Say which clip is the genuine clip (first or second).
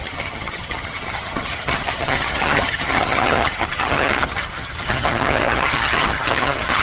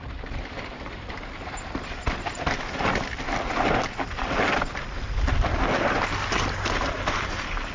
second